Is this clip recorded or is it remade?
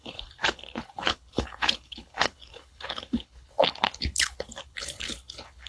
remade